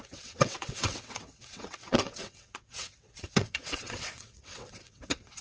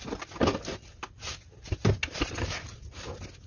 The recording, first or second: second